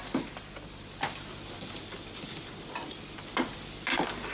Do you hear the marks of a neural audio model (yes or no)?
no